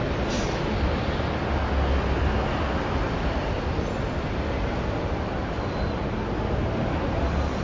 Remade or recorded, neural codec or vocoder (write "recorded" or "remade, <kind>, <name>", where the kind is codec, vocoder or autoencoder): recorded